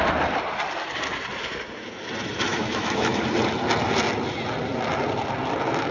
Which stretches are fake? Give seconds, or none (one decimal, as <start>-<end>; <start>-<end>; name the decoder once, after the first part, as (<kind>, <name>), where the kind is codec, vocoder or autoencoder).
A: 2.5-3.2 (autoencoder, DAC-VAE)